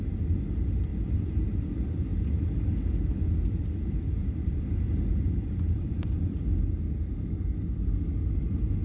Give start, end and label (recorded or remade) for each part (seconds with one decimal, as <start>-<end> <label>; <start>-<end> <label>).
0.0-0.9 recorded; 0.9-2.6 remade; 2.6-4.2 recorded; 4.2-6.2 remade; 6.2-8.8 recorded